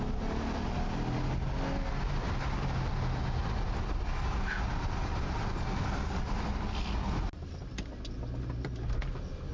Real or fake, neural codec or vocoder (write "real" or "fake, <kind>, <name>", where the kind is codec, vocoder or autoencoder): real